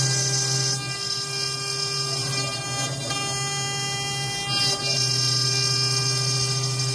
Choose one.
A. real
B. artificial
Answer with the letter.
A